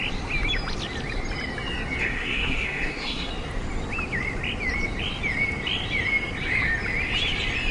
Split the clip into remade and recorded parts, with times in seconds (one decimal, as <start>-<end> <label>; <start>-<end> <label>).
0.0-2.0 recorded; 2.0-3.3 remade; 3.3-7.7 recorded